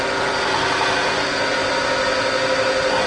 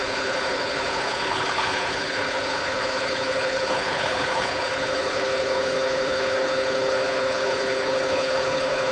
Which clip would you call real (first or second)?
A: first